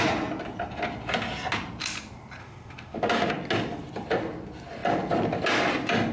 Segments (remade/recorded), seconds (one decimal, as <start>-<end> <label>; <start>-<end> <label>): 0.0-2.4 recorded; 2.4-3.3 remade; 3.3-6.1 recorded